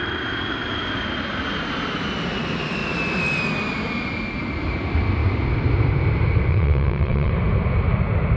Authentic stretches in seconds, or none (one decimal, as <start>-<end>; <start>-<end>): 0.0-6.5; 7.3-8.4